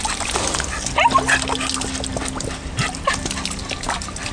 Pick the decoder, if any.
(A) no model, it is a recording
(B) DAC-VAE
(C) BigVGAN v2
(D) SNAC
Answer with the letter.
A